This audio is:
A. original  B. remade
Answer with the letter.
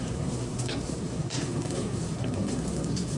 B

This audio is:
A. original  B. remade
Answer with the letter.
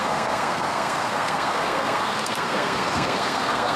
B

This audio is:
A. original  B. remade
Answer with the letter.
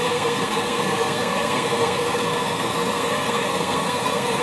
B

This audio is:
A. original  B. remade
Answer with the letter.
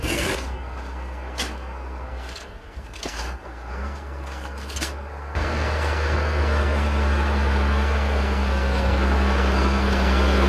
B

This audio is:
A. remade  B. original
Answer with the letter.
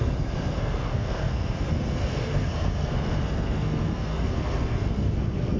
A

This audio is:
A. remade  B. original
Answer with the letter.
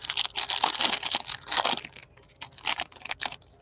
B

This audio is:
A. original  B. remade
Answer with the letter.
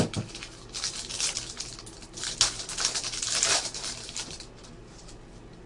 A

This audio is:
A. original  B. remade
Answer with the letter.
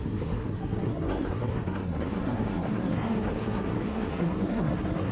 B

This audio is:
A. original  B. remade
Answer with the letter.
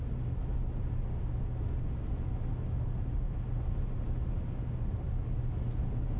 A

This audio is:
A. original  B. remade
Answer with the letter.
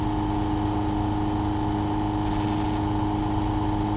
A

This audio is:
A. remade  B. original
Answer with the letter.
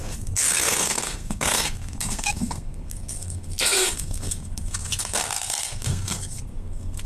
A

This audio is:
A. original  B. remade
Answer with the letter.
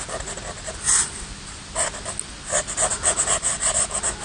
A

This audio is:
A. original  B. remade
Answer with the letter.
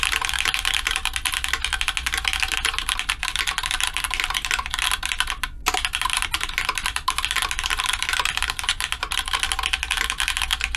A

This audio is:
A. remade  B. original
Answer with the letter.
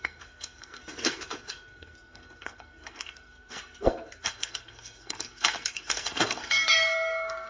A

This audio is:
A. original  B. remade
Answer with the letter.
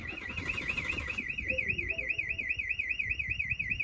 A